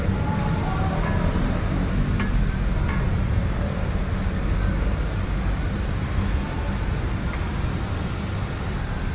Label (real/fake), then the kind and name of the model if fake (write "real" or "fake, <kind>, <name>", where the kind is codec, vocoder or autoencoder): real